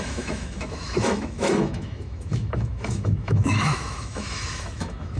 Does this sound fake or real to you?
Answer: fake